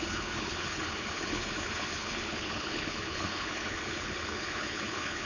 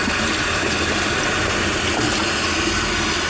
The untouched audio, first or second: second